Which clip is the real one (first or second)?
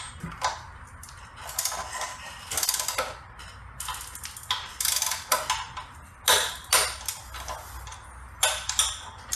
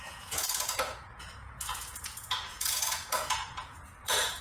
first